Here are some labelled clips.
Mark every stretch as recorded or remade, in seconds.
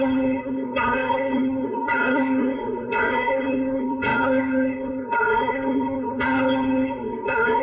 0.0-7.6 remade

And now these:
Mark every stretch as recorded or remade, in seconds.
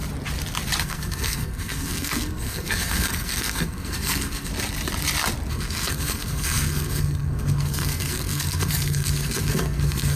0.0-0.8 recorded; 0.8-4.5 remade; 4.5-5.5 recorded; 5.5-10.2 remade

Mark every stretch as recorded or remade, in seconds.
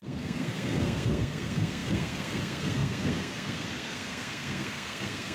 0.0-5.3 remade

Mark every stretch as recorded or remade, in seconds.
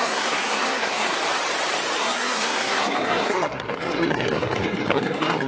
0.0-1.2 remade; 1.2-2.0 recorded; 2.0-5.5 remade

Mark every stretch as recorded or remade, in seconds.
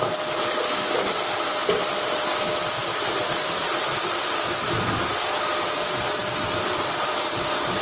0.0-7.8 recorded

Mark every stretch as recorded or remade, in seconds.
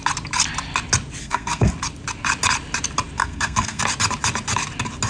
0.0-1.2 recorded; 1.2-1.7 remade; 1.7-3.2 recorded; 3.2-3.8 remade; 3.8-5.1 recorded